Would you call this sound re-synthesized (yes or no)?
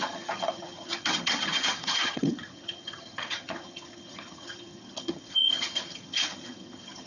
yes